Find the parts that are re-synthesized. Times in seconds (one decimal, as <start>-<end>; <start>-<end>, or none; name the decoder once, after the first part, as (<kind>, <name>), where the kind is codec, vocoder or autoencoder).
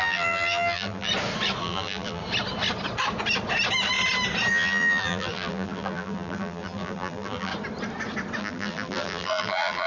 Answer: 0.0-1.1 (vocoder, BigVGAN v2); 1.6-2.2; 4.5-7.5; 8.4-9.9